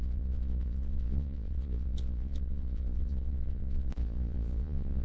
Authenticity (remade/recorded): remade